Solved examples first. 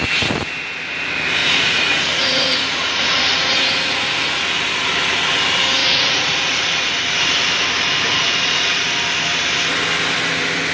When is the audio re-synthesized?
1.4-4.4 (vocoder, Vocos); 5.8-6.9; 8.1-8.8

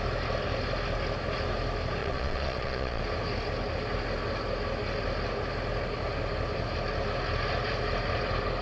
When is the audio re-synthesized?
2.0-3.0 (vocoder, Vocos)

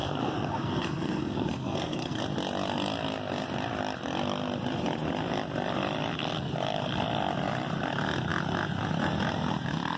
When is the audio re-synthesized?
0.0-2.2 (codec, SNAC)

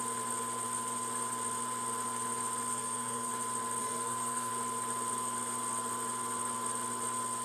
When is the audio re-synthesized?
2.7-3.3 (codec, SNAC); 3.8-4.5